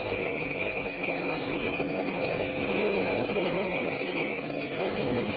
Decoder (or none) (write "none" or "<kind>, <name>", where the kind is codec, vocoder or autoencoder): codec, SNAC